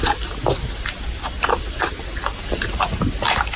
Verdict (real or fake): fake